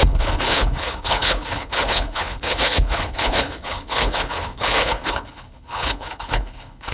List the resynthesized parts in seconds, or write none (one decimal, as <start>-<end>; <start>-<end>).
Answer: 0.0-6.9